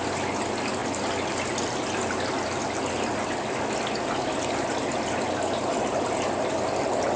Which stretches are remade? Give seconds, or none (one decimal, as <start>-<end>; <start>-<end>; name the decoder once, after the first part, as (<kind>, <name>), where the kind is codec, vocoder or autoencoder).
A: none